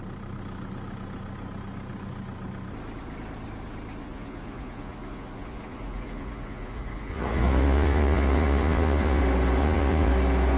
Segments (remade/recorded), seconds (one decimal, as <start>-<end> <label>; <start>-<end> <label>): 0.0-4.0 recorded; 4.0-9.2 remade; 9.2-9.6 recorded; 9.6-10.1 remade; 10.1-10.6 recorded